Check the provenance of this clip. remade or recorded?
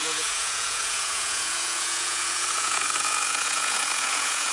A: remade